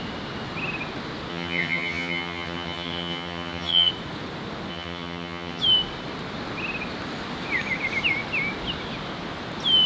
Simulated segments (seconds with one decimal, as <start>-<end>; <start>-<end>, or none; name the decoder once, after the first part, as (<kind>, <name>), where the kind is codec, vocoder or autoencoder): 1.3-3.9 (vocoder, HiFi-GAN); 4.7-5.6